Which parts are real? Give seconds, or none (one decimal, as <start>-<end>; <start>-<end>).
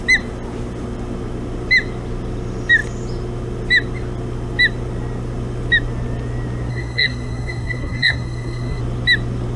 0.0-6.7; 8.8-9.6